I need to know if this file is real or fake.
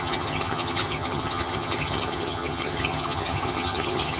fake